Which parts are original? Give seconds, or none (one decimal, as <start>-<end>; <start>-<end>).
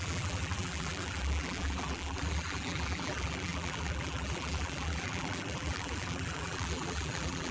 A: none